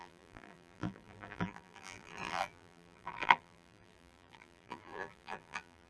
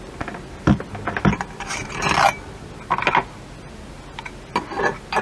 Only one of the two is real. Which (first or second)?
second